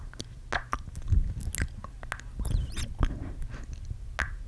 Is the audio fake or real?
real